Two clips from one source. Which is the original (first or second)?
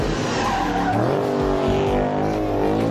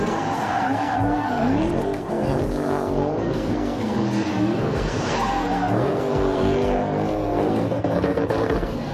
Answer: first